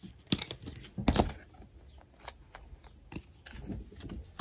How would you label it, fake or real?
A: real